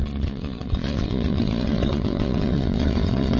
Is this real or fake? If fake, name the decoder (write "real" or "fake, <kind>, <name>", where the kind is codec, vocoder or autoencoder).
fake, vocoder, WaveNeXt